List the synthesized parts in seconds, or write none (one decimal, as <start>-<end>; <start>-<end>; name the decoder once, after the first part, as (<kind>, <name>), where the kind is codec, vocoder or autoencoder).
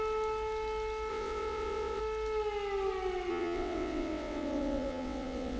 1.1-2.0 (vocoder, WaveNeXt); 3.3-5.6